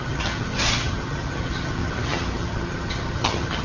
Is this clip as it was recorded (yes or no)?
no